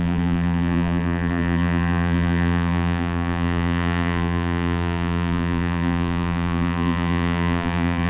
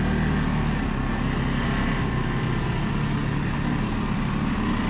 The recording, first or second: second